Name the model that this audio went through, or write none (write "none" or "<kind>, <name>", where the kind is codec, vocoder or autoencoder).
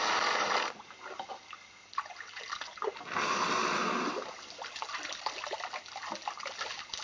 none